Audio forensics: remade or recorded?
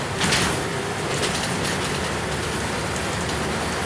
recorded